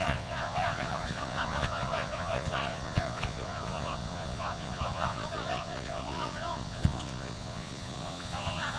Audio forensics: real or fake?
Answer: fake